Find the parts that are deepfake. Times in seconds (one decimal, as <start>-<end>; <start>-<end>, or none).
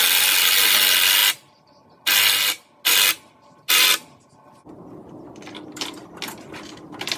none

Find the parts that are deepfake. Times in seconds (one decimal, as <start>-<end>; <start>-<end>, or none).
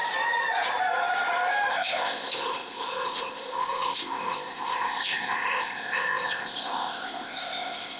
1.7-8.0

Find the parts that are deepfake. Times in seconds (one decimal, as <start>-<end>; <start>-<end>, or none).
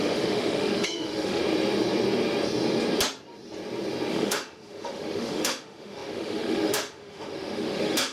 0.0-1.4; 4.1-8.1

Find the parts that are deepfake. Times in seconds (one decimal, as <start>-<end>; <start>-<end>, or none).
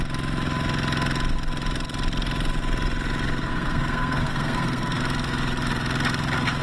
3.4-5.0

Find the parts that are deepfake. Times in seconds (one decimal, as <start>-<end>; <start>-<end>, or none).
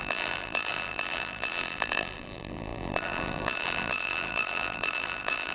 0.0-5.5